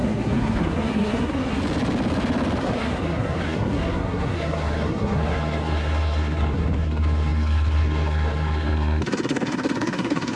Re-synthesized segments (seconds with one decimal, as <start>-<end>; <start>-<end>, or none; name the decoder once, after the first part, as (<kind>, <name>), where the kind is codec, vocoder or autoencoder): 0.0-1.6 (codec, SNAC); 2.6-10.4